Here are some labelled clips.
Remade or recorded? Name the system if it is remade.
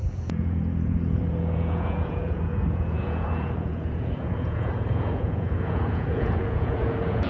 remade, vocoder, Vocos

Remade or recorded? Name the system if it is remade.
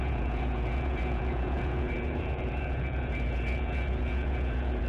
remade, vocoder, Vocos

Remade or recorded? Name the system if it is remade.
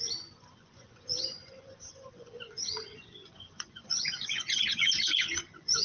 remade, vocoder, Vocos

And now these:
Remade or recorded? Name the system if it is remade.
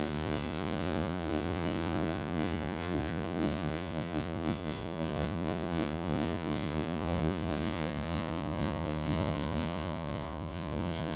remade, vocoder, Vocos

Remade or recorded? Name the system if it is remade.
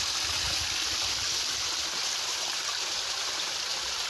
recorded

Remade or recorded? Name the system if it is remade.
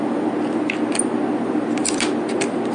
recorded